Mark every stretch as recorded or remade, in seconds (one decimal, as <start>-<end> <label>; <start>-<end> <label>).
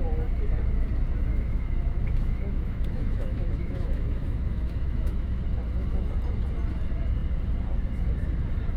0.0-1.3 recorded; 1.3-5.4 remade; 5.4-8.8 recorded